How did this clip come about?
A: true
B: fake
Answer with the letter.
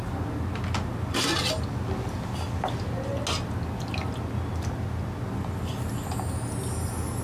A